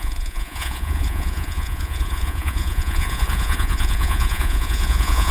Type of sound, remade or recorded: remade